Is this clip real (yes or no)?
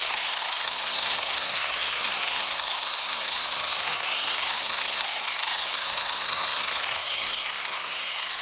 no